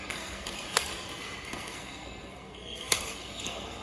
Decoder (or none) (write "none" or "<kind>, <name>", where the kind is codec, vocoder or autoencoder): codec, SNAC